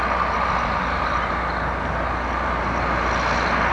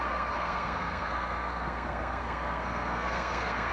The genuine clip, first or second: first